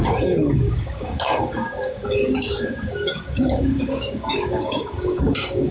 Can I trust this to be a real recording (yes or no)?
no